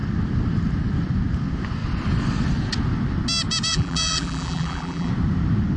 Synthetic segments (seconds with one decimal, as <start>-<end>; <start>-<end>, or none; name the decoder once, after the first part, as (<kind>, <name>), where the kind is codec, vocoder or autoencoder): 3.7-5.1 (vocoder, BigVGAN v2)